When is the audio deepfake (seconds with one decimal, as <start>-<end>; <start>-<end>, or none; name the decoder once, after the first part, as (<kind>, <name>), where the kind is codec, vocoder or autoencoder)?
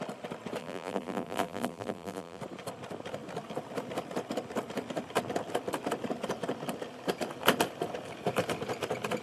0.6-2.4 (vocoder, BigVGAN v2)